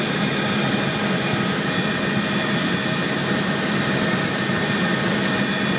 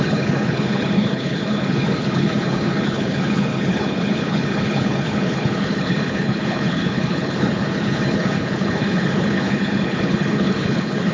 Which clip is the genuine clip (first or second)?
first